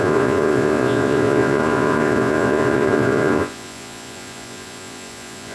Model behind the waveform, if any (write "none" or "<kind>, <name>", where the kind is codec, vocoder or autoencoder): vocoder, Vocos